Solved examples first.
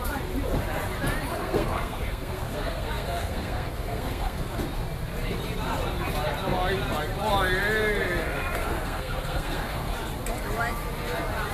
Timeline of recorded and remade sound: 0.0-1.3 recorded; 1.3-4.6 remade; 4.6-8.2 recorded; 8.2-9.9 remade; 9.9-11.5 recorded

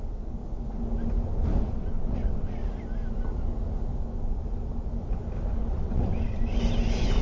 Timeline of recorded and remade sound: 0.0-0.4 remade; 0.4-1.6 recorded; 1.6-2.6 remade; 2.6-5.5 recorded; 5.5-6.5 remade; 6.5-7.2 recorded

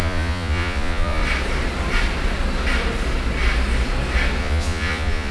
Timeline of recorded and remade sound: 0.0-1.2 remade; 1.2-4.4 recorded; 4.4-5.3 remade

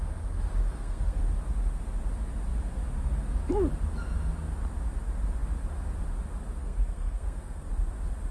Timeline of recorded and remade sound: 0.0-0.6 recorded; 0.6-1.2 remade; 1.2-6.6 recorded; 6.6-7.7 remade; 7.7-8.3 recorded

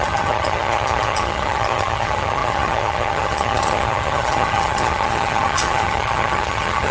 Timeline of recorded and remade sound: 0.0-6.9 remade

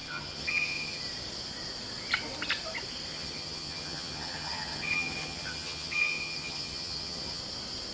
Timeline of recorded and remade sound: 0.0-1.0 remade; 1.0-3.1 recorded; 3.1-7.4 remade; 7.4-7.9 recorded

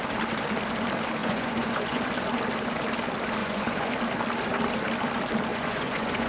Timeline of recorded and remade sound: 0.0-1.2 recorded; 1.2-2.0 remade; 2.0-3.4 recorded; 3.4-3.9 remade; 3.9-5.5 recorded; 5.5-6.3 remade

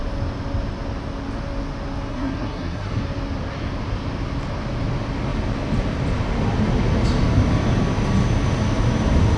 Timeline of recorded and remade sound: 0.0-2.1 recorded; 2.1-3.0 remade; 3.0-9.4 recorded